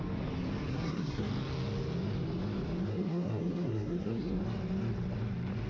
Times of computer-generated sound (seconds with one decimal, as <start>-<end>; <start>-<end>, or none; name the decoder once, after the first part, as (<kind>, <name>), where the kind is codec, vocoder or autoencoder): 0.7-1.3 (codec, SNAC); 2.9-4.4

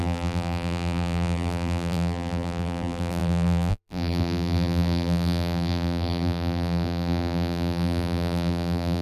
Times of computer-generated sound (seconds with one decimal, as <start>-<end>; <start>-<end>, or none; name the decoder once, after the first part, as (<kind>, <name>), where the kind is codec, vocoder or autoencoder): 0.0-9.0 (vocoder, BigVGAN v2)